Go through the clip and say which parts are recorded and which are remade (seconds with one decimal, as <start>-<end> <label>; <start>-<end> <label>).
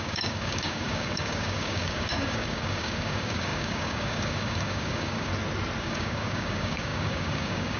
0.0-5.3 remade; 5.3-5.8 recorded; 5.8-7.8 remade